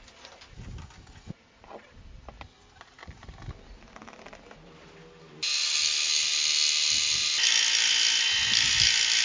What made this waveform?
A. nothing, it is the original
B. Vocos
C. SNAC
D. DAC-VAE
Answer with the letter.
A